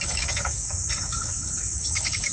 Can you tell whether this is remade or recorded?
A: remade